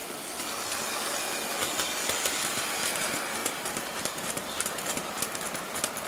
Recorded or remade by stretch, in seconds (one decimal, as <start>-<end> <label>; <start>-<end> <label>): 0.0-3.4 recorded; 3.4-5.2 remade; 5.2-6.1 recorded